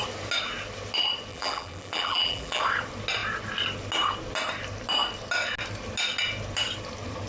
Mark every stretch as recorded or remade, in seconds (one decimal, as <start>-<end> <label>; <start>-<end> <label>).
0.0-1.3 recorded; 1.3-2.6 remade; 2.6-7.3 recorded